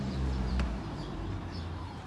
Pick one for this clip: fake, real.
fake